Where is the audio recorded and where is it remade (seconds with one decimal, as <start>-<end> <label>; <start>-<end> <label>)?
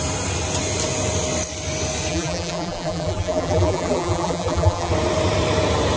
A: 0.0-2.1 recorded; 2.1-4.9 remade; 4.9-6.0 recorded